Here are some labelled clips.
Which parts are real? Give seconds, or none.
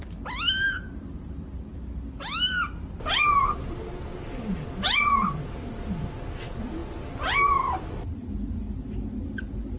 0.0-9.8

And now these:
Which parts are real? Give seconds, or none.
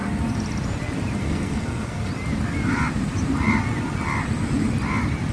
0.0-1.2; 2.1-5.3